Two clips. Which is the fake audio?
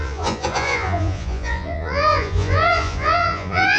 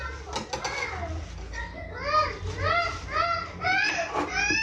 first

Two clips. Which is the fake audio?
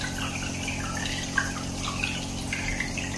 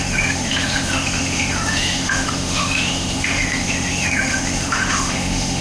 second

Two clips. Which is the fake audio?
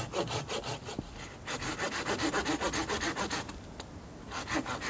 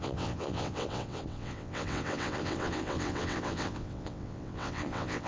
second